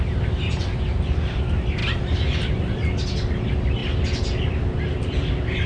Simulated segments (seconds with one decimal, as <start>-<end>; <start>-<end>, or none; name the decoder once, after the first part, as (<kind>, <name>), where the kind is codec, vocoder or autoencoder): 1.8-2.4 (vocoder, BigVGAN v2)